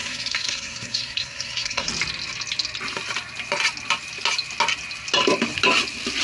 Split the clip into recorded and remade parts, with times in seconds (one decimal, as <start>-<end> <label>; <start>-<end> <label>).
0.0-1.9 remade; 1.9-6.2 recorded